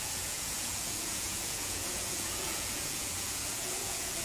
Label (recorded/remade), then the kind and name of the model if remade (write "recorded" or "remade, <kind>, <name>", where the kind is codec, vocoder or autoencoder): remade, vocoder, Vocos